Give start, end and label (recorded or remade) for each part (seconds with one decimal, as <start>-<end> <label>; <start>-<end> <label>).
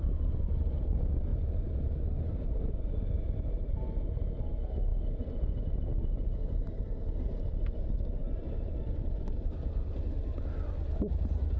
0.0-1.3 recorded; 1.3-3.8 remade; 3.8-8.4 recorded; 8.4-10.0 remade; 10.0-11.6 recorded